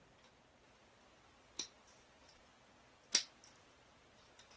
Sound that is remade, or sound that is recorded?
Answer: recorded